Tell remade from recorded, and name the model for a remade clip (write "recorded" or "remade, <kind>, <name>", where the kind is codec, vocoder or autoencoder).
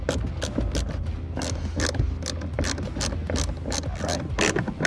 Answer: recorded